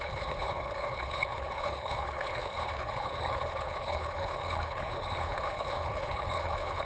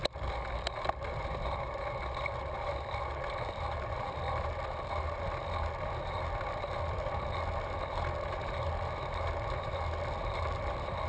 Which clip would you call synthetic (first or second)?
first